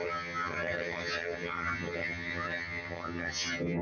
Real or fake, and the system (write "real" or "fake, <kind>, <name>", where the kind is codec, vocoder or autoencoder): fake, vocoder, HiFi-GAN